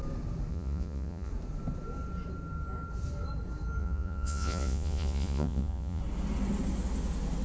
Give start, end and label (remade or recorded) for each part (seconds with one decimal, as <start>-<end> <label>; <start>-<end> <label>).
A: 0.0-0.5 recorded; 0.5-1.3 remade; 1.3-3.8 recorded; 3.8-6.0 remade; 6.0-7.4 recorded